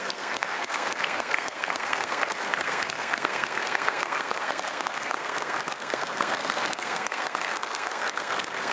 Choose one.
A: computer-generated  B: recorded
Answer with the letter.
A